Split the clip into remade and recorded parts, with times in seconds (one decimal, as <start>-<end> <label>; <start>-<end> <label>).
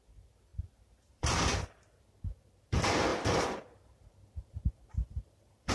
0.0-5.7 remade